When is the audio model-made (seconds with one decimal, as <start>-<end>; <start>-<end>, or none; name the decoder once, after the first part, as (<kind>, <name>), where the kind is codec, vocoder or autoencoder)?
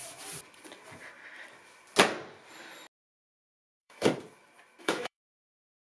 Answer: 3.5-4.1 (autoencoder, DAC-VAE); 4.8-5.9